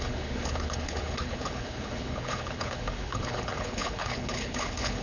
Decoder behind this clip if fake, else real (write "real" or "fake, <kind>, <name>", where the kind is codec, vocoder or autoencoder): fake, codec, HILCodec